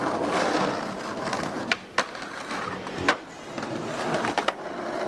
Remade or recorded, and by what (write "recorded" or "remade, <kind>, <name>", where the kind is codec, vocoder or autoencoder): recorded